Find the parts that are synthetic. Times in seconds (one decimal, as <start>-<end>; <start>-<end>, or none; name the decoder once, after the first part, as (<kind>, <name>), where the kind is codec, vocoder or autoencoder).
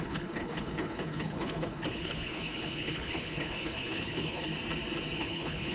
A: 0.0-4.5 (codec, HILCodec); 5.2-5.7